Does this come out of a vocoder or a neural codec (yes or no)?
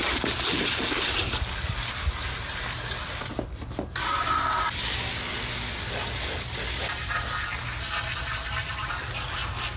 no